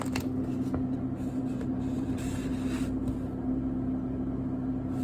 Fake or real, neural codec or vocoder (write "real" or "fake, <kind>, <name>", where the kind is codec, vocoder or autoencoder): real